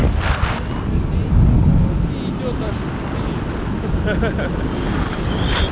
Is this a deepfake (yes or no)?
no